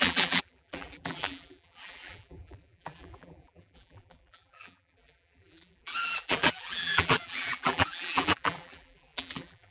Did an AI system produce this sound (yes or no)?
yes